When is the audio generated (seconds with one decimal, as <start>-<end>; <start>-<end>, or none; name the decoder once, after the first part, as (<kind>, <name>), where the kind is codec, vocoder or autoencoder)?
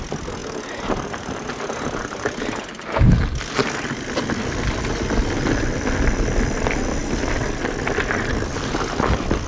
none